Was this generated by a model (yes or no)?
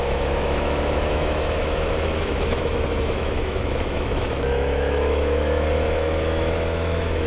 yes